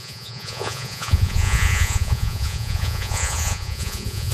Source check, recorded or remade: remade